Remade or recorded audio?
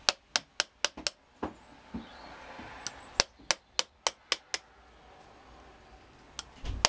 recorded